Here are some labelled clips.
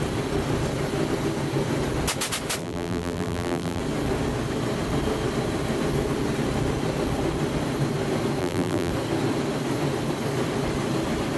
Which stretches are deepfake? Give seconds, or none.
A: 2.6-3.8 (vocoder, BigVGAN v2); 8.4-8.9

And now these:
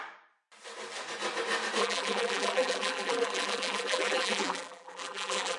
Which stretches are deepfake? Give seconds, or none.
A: 1.8-5.6 (vocoder, BigVGAN v2)